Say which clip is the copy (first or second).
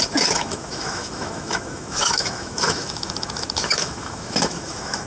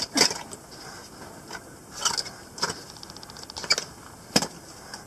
first